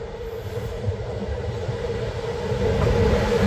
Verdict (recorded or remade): recorded